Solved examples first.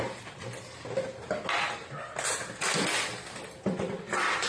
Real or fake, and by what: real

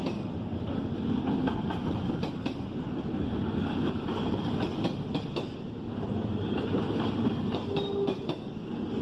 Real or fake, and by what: real